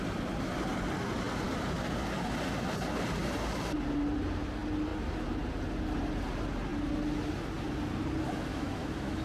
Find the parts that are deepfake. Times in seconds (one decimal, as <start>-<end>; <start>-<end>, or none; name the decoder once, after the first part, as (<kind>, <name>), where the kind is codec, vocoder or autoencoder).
8.5-9.2 (autoencoder, DAC-VAE)